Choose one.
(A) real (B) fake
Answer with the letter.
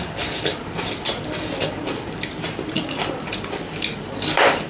A